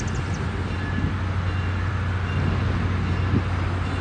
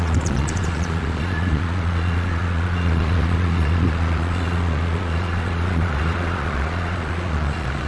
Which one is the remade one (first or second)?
second